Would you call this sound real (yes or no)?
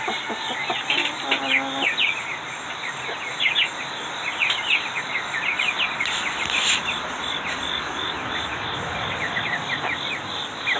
yes